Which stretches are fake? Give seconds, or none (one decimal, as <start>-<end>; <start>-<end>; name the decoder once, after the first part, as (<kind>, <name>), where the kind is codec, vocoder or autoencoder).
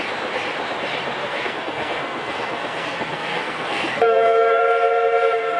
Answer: 1.2-4.6 (codec, SNAC)